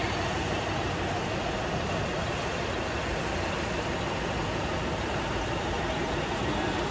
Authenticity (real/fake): real